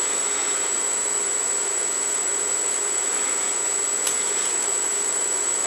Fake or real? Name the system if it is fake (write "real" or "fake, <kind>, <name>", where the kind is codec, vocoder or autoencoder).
fake, vocoder, Vocos